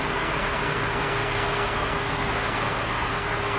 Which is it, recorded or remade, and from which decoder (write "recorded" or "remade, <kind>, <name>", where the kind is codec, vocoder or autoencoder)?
remade, codec, SNAC